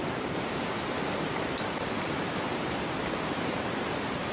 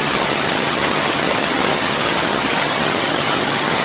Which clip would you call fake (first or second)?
second